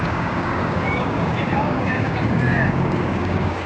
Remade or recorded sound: remade